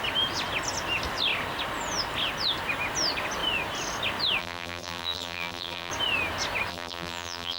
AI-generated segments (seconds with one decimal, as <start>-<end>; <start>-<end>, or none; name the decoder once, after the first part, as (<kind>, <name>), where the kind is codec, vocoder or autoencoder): 4.4-5.9 (vocoder, BigVGAN v2); 6.7-7.6